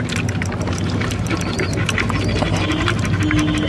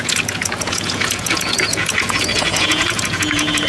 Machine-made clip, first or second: second